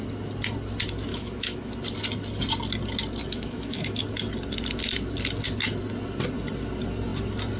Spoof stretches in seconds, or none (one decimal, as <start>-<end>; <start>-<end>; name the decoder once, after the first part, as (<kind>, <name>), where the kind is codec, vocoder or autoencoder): 1.1-1.7 (autoencoder, DAC-VAE); 3.2-4.0

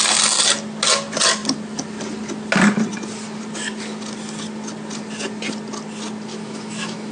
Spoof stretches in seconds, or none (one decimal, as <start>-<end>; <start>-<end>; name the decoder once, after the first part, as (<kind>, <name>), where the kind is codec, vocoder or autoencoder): 6.3-7.1 (autoencoder, DAC-VAE)

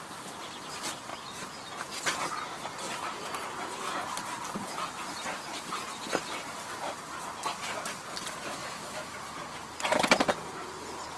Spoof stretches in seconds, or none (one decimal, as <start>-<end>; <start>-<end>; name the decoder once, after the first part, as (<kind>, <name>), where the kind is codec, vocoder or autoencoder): 8.6-9.2 (autoencoder, DAC-VAE)

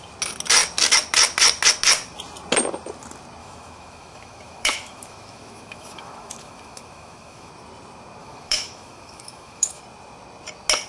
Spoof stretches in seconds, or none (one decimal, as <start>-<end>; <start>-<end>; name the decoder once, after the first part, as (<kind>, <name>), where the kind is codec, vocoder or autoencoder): 3.4-7.5 (autoencoder, DAC-VAE); 8.2-9.8